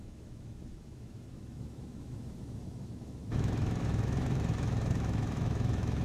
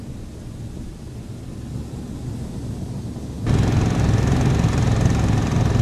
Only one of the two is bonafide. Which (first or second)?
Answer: second